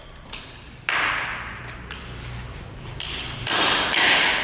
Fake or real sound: fake